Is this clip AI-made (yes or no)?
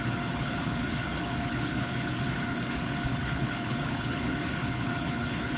yes